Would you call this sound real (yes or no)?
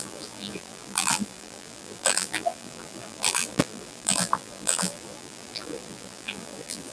no